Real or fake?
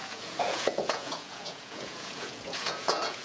fake